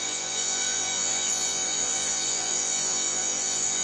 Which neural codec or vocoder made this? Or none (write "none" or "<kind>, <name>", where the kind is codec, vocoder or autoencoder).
vocoder, Vocos